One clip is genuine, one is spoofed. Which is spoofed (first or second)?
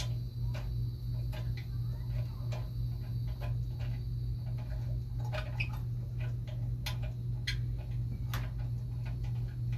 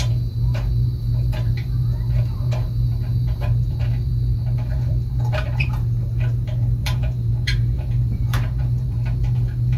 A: second